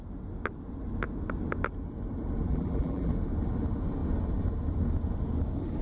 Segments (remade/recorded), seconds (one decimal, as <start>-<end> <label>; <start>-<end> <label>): 0.0-2.5 recorded; 2.5-3.1 remade; 3.1-5.8 recorded